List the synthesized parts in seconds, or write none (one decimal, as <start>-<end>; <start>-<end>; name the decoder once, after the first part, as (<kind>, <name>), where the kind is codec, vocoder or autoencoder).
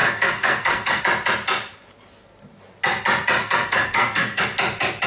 0.0-1.0 (codec, SNAC); 3.4-4.4